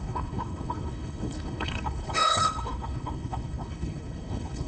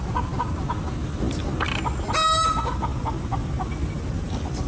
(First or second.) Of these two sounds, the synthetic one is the first